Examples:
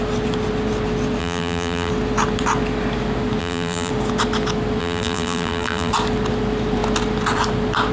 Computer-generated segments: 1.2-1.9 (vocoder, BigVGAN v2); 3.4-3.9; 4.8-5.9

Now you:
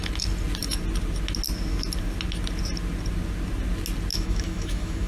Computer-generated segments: 4.1-5.1 (autoencoder, DAC-VAE)

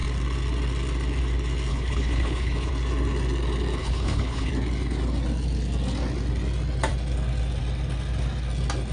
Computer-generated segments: 1.7-2.7 (codec, HILCodec); 3.8-4.5